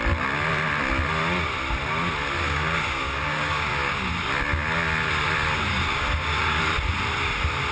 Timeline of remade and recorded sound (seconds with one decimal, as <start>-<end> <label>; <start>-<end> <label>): 0.0-2.4 recorded; 2.4-4.1 remade; 4.1-5.7 recorded; 5.7-6.6 remade; 6.6-7.7 recorded